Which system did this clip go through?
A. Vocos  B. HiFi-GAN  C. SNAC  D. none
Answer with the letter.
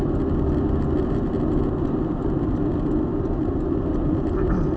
D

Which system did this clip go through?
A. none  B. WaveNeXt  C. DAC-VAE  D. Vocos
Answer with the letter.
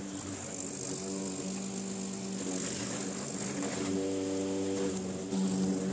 A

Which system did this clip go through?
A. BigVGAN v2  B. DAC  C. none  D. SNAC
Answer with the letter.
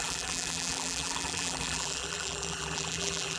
A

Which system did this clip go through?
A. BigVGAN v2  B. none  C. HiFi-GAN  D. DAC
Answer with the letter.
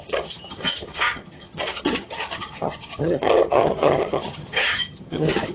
C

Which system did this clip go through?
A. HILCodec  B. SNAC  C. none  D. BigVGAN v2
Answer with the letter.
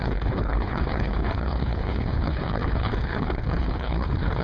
A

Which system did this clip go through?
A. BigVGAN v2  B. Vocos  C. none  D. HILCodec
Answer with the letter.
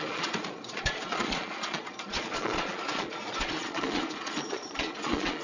B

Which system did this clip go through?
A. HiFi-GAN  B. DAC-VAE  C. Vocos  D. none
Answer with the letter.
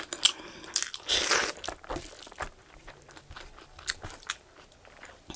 D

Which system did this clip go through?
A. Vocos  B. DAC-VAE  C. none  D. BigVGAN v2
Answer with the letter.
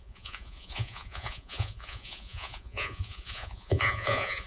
A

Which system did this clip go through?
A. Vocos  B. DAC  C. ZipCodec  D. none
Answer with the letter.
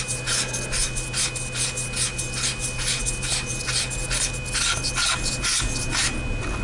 D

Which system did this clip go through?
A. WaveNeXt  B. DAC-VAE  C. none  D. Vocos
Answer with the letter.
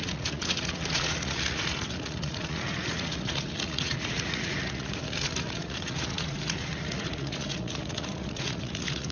D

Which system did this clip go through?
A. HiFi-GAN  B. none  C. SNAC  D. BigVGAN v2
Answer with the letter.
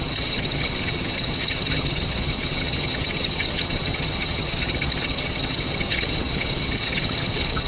A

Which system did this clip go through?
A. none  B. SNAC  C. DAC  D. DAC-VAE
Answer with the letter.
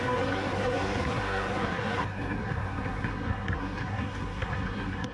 B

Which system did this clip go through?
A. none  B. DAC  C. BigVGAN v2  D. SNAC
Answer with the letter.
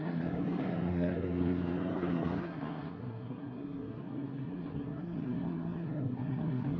D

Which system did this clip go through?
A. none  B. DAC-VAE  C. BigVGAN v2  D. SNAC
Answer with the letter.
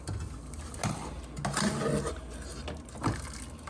A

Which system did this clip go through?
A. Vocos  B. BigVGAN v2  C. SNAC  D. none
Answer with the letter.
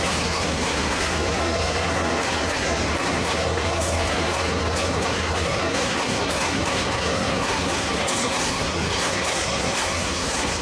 C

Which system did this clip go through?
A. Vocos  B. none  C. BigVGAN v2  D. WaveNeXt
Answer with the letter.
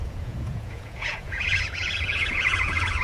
A